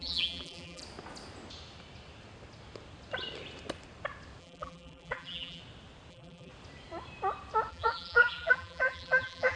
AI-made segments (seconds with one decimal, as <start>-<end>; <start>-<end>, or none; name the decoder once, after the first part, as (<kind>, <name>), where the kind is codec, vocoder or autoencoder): 0.0-0.8 (vocoder, BigVGAN v2); 4.4-5.6; 6.1-6.5; 7.7-9.6